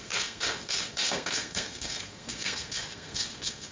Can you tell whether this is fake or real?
fake